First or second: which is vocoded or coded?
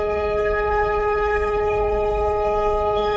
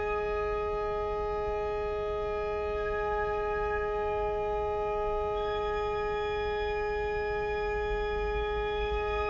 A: first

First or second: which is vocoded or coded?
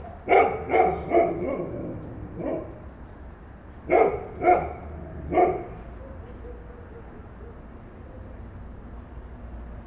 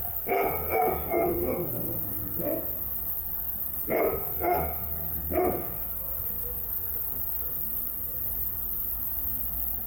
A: second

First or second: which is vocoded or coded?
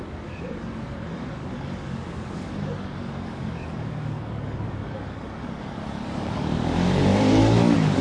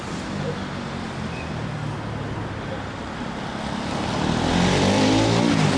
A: first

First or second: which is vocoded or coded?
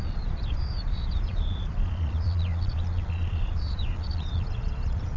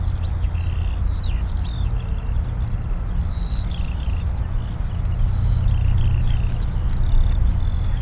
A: first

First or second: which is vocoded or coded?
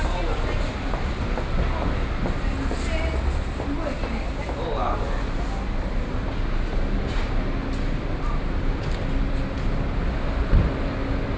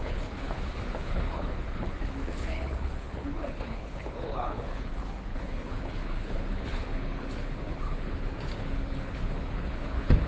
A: second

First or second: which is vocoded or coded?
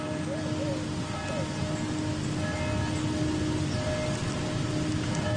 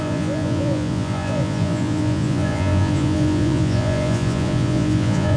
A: second